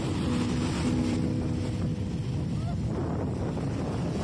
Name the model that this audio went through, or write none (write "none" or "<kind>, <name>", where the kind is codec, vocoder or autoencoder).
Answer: none